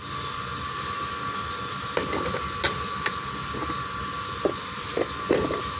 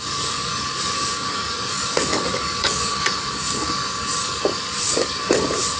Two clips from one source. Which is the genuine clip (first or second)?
first